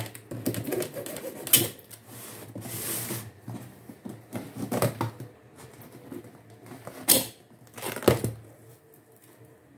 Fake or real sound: real